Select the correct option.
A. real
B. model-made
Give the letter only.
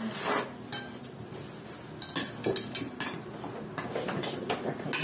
A